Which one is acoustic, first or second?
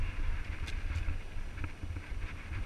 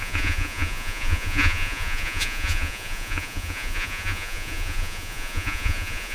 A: first